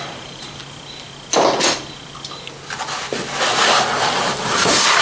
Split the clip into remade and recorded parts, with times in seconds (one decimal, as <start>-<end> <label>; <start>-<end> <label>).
0.0-0.6 remade; 0.6-3.6 recorded; 3.6-5.0 remade